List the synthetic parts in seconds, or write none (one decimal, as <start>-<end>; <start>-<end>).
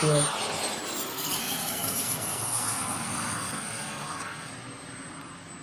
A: 1.1-4.5